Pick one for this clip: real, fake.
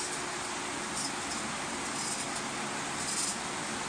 real